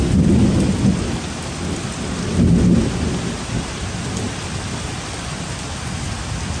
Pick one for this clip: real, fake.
real